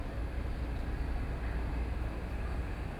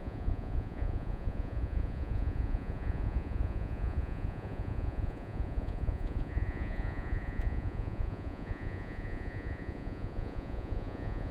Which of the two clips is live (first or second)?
first